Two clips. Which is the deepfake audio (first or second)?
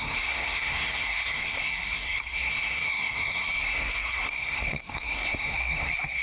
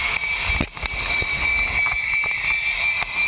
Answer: first